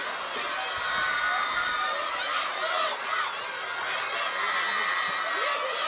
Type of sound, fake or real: real